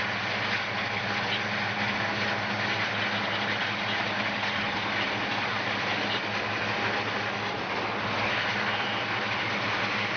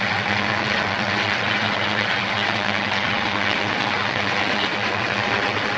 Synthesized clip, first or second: second